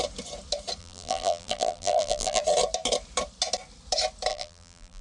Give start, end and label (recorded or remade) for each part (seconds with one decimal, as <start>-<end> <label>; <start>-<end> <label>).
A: 0.0-0.8 recorded; 0.8-2.4 remade; 2.4-4.3 recorded; 4.3-5.0 remade